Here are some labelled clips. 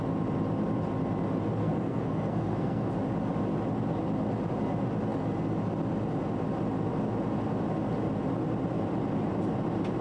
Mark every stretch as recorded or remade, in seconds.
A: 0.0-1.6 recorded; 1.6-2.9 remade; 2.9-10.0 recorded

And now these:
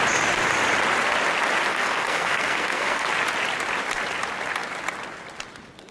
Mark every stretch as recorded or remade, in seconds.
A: 0.0-1.7 recorded; 1.7-3.1 remade; 3.1-5.9 recorded